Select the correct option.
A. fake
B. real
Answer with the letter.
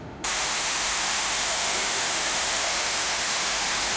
A